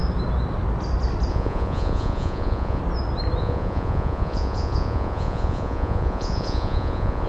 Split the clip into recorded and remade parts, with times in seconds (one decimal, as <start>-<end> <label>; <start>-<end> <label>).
0.0-1.3 recorded; 1.3-2.8 remade; 2.8-3.4 recorded; 3.4-7.3 remade